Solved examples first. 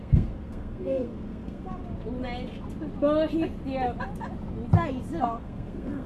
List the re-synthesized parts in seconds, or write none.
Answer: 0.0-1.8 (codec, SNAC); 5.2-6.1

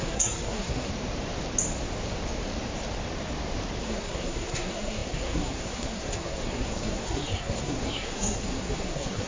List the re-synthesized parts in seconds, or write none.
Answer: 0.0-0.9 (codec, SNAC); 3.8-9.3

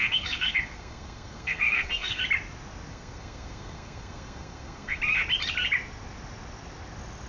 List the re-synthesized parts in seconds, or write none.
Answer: 0.0-2.2 (codec, SNAC); 2.9-5.0

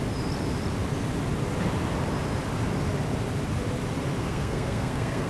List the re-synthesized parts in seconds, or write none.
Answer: 4.2-5.3 (codec, SNAC)

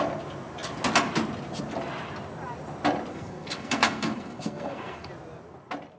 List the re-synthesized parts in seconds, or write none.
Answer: 3.1-5.1 (codec, SNAC)

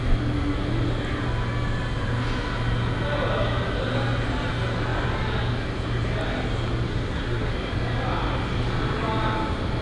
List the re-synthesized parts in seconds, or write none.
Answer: 6.9-7.5 (codec, SNAC)